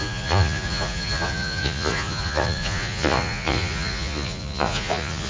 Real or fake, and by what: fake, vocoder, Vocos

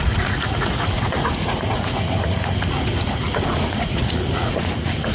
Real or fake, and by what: fake, vocoder, Vocos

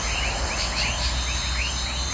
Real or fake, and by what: real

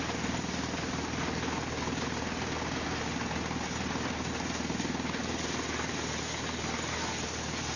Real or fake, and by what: real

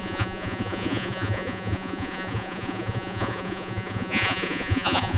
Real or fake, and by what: fake, vocoder, Vocos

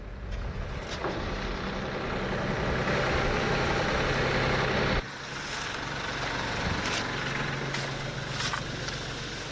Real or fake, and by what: real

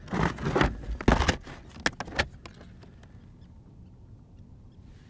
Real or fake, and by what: real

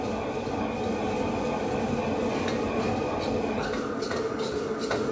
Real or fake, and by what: real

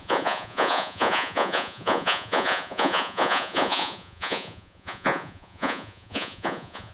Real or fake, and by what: fake, vocoder, Vocos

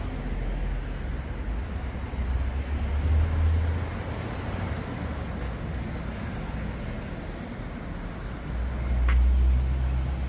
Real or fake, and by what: real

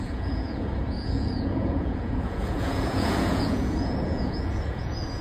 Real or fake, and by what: fake, vocoder, Vocos